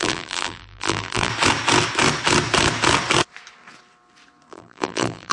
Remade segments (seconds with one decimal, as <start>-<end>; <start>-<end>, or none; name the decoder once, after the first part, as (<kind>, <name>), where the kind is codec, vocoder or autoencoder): 0.0-1.3 (vocoder, BigVGAN v2); 4.5-5.3